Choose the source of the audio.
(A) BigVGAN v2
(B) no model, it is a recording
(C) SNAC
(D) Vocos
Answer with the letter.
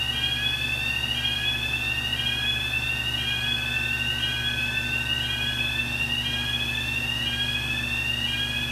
B